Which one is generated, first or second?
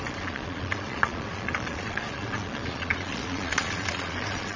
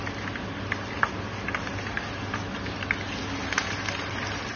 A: first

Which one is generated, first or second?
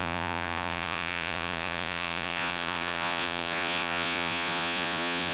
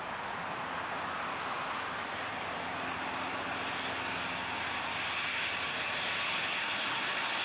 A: first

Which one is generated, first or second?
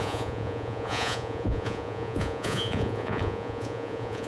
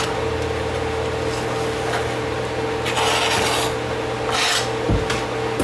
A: first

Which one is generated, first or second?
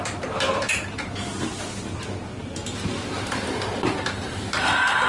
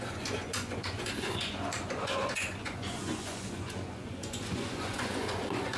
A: second